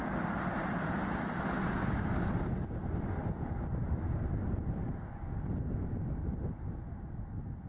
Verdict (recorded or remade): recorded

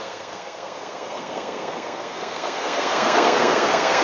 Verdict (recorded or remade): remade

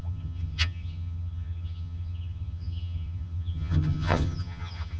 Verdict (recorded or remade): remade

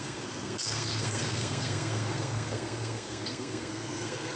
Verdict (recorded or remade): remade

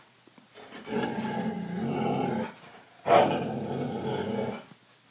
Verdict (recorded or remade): recorded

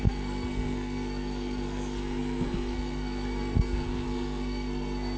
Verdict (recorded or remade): remade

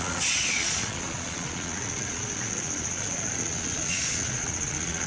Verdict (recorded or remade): remade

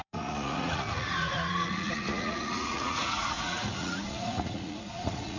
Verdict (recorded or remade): remade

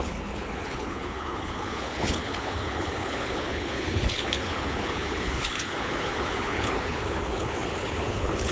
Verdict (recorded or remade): remade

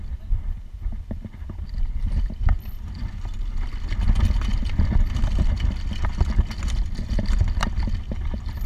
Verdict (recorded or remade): recorded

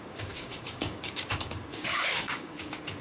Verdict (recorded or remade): remade